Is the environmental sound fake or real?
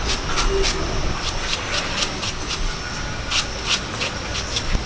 real